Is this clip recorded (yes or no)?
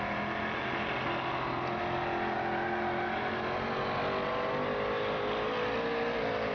yes